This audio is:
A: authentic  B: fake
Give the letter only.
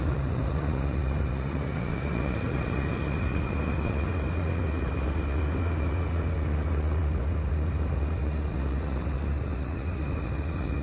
B